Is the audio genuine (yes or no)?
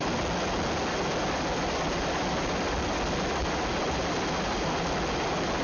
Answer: yes